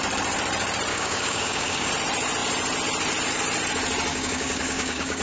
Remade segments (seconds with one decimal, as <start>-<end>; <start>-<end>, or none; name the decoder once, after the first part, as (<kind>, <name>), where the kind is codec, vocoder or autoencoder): 0.9-1.9 (codec, DAC); 4.1-5.2